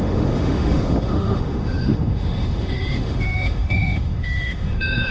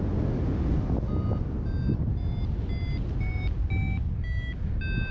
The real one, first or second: second